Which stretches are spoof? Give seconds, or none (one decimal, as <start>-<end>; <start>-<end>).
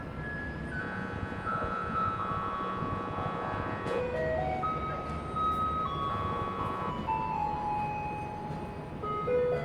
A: 0.8-4.0; 6.1-6.9